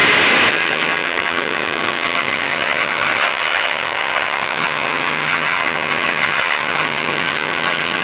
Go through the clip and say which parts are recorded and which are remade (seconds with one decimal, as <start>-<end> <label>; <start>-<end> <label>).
0.0-0.5 recorded; 0.5-8.0 remade